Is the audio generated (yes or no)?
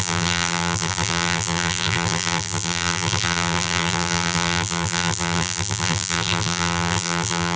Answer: yes